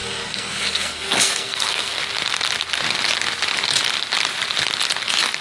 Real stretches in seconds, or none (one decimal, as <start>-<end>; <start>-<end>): 2.0-5.4